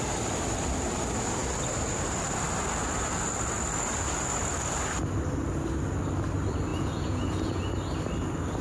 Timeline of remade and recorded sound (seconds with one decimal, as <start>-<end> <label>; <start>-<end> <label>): 0.0-6.7 recorded; 6.7-7.6 remade; 7.6-8.6 recorded